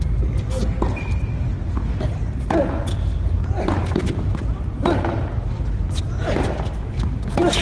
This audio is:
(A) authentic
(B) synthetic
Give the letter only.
A